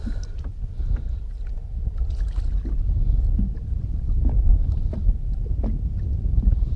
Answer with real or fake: real